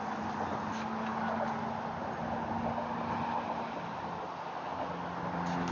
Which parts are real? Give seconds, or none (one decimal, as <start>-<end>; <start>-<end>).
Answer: 0.0-5.7